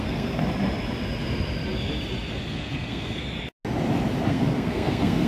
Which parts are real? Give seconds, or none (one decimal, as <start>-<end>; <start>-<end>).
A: 0.4-2.3; 3.2-4.3

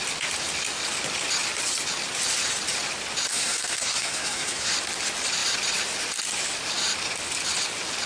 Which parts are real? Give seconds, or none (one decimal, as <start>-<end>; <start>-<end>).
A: 0.0-3.3; 4.7-8.1

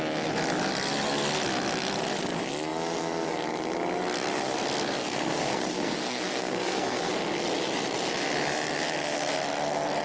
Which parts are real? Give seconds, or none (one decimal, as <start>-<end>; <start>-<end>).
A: 0.0-5.0; 7.1-10.0

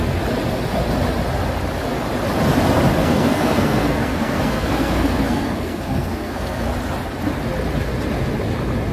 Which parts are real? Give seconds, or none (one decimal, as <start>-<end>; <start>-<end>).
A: 0.0-3.0; 6.7-8.9

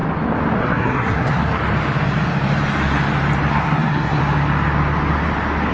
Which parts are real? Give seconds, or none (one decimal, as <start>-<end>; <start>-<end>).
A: 0.0-0.6; 1.6-3.5; 4.2-5.7

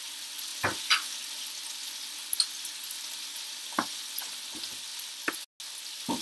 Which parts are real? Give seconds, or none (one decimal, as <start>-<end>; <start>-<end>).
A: 0.0-6.2